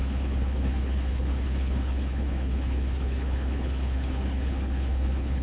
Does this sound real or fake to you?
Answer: fake